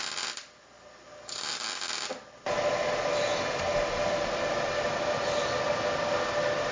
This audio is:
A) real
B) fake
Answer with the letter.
A